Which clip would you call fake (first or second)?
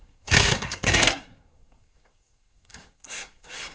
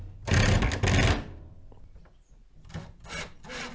first